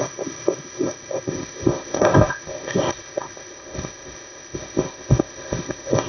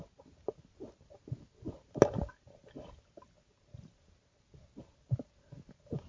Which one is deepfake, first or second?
first